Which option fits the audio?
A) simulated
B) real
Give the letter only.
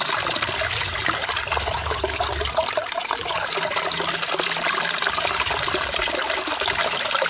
B